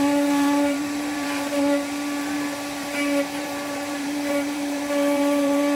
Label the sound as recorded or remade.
remade